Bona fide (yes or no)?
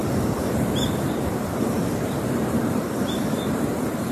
no